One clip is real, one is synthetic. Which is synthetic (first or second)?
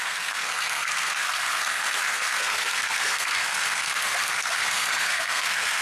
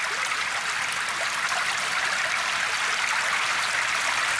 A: first